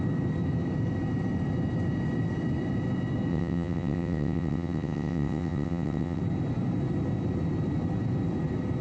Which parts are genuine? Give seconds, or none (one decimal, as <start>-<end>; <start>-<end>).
0.0-3.3; 6.2-8.8